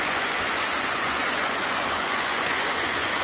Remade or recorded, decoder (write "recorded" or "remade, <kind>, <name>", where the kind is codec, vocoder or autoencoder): remade, vocoder, Vocos